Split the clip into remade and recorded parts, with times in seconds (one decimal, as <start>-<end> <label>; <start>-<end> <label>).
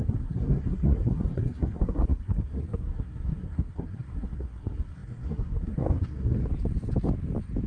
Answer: 0.0-6.4 remade; 6.4-7.7 recorded